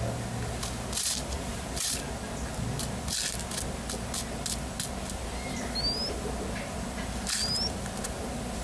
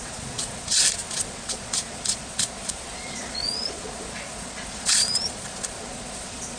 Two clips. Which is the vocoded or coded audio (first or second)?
second